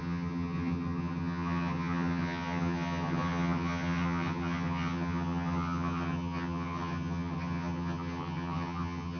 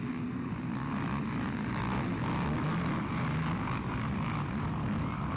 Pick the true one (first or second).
second